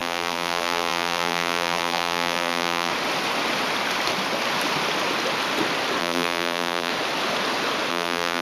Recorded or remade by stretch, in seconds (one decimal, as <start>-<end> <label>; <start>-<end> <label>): 0.0-2.9 remade; 2.9-6.0 recorded; 6.0-6.9 remade; 6.9-7.9 recorded; 7.9-8.4 remade